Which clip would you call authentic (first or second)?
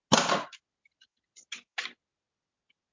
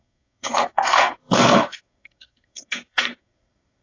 first